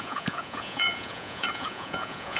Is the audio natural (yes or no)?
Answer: no